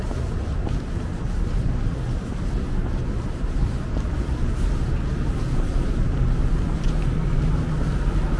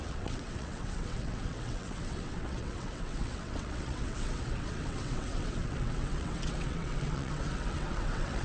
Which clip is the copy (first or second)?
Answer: second